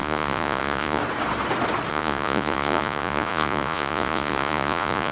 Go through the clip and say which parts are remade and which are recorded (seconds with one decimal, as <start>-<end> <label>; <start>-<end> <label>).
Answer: 0.0-1.0 remade; 1.0-1.9 recorded; 1.9-5.1 remade